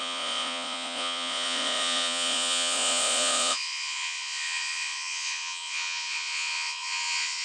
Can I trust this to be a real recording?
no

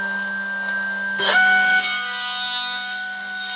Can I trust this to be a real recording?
no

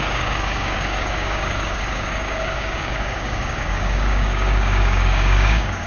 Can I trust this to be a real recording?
no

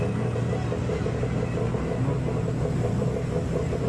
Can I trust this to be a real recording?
yes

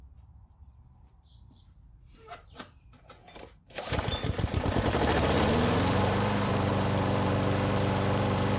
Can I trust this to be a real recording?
no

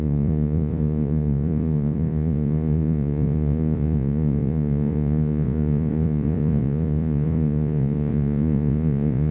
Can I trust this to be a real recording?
no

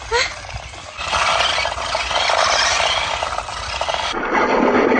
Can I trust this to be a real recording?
yes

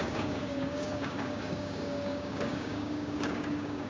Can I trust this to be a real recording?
no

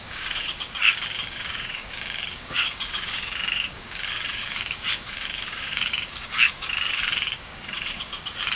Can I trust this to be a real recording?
no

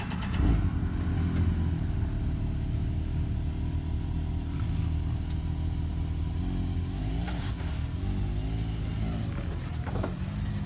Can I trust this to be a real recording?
yes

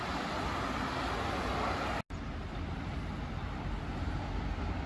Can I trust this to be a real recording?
yes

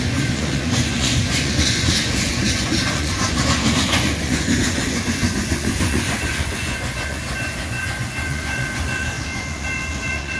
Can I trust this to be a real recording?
no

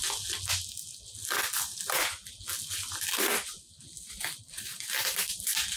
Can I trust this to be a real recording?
yes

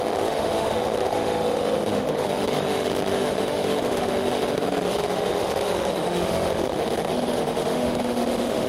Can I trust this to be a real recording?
no